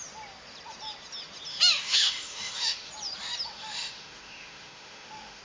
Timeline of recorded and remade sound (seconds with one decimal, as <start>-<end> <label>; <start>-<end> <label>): 0.0-1.5 recorded; 1.5-2.9 remade; 2.9-3.5 recorded; 3.5-5.4 remade

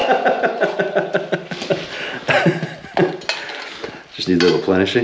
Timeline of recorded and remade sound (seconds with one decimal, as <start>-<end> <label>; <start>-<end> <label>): 0.0-0.8 remade; 0.8-5.0 recorded

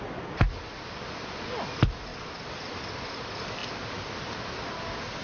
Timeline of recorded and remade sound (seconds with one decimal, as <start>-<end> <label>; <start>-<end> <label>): 0.0-5.2 recorded

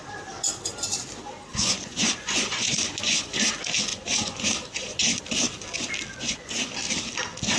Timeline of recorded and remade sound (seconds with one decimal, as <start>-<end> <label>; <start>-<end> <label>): 0.0-1.5 recorded; 1.5-3.5 remade; 3.5-3.9 recorded; 3.9-5.2 remade; 5.2-6.1 recorded; 6.1-6.7 remade; 6.7-7.6 recorded

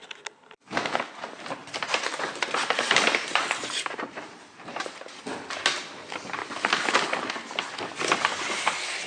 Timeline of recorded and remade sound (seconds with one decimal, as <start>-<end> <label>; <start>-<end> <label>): 0.0-1.6 recorded; 1.6-4.7 remade; 4.7-6.4 recorded; 6.4-7.3 remade; 7.3-9.1 recorded

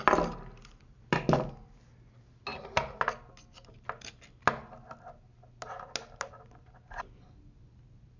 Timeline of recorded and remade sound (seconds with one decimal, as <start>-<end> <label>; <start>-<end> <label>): 0.0-8.2 recorded

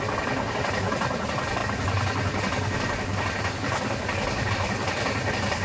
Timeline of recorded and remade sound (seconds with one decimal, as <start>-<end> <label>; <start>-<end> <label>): 0.0-5.6 recorded